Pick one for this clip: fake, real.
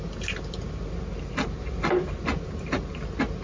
real